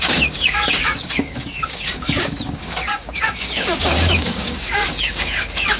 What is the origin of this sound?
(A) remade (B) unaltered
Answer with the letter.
A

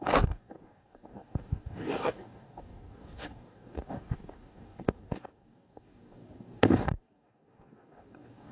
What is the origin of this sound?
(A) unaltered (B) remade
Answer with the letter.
B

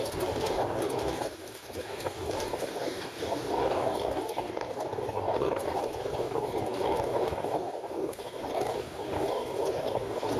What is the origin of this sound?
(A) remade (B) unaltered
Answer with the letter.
A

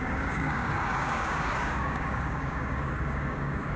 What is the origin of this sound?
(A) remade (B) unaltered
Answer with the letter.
A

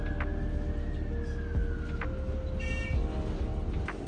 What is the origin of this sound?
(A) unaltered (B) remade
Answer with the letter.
A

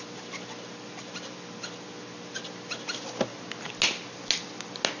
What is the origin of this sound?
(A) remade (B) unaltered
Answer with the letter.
B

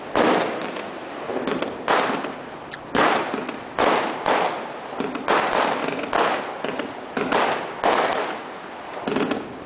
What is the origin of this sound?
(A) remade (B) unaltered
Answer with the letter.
B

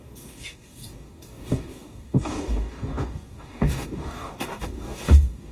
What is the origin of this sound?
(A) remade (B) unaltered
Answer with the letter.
A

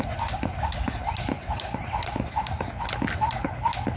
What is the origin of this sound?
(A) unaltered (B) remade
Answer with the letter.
A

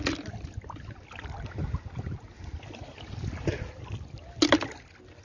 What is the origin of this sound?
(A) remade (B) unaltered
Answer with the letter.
B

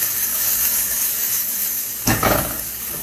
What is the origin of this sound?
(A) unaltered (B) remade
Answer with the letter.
B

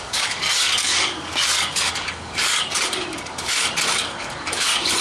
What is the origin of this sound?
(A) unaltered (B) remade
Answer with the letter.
B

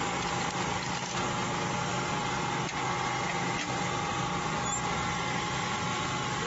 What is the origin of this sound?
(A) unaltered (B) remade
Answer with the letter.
A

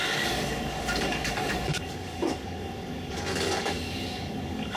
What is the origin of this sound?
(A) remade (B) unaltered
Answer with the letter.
A